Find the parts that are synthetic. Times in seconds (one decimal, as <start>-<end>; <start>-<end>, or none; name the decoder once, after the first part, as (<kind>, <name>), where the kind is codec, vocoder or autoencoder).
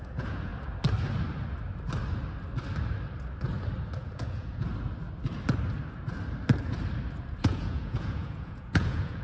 0.0-0.5 (vocoder, Vocos); 4.0-4.7; 7.4-9.2